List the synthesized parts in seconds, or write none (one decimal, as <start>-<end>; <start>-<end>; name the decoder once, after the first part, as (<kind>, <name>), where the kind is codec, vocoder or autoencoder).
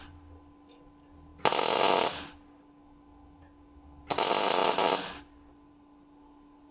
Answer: none